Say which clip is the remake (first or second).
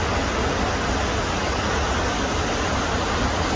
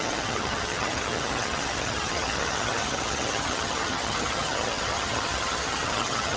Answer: second